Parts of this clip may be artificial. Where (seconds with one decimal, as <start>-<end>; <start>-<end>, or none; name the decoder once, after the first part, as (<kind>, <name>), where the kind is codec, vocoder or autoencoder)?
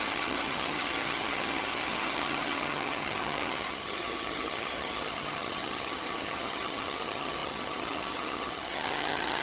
0.0-9.4 (vocoder, HiFi-GAN)